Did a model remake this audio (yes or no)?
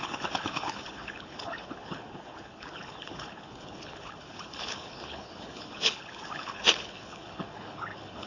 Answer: yes